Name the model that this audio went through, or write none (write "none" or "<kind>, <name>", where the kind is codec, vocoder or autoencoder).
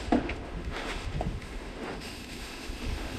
autoencoder, DAC-VAE